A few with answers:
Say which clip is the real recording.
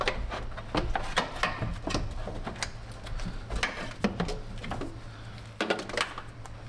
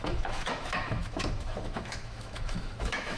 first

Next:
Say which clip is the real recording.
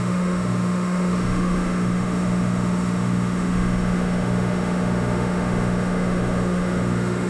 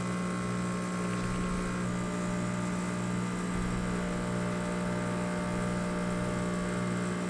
second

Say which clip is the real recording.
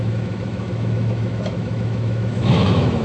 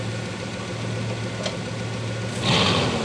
second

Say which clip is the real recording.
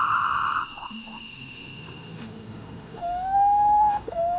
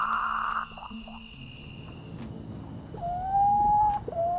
second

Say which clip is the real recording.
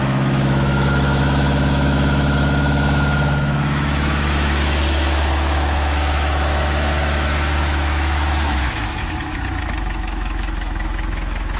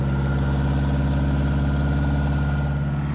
second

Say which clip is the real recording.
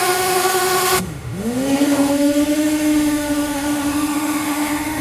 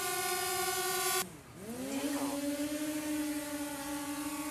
second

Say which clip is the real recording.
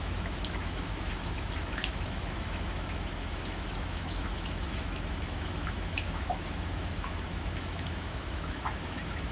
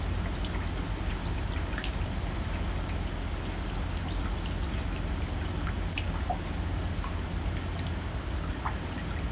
second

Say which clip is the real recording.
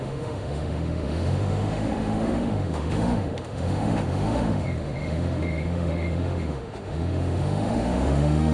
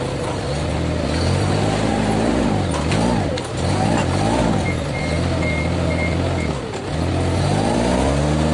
second